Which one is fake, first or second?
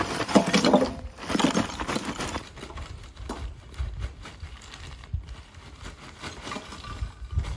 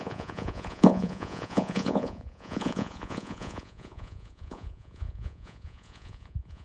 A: second